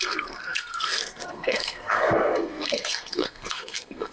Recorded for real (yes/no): no